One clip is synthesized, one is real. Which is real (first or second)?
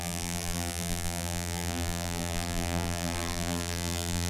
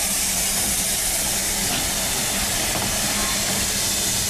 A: second